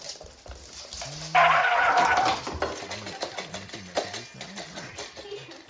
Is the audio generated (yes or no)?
no